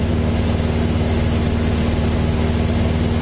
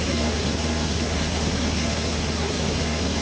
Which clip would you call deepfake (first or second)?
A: second